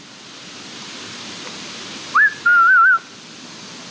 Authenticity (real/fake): real